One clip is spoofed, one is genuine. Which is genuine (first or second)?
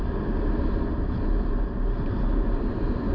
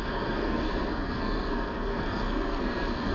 first